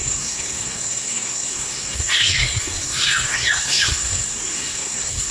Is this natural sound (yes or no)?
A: no